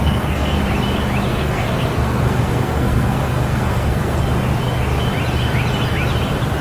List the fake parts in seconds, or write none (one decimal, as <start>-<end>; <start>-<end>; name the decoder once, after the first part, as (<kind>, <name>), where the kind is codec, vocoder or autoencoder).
0.0-0.6 (codec, SNAC); 1.3-4.2